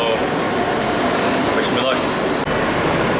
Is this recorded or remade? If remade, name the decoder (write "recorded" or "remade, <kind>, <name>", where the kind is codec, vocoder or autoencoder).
recorded